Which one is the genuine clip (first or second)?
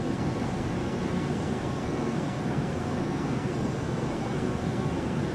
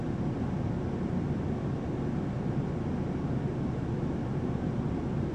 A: second